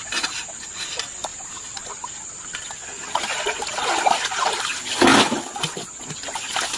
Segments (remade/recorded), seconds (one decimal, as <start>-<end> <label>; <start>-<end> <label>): 0.0-6.8 recorded